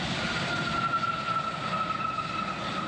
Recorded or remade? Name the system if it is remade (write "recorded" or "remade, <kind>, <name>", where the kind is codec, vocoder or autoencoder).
recorded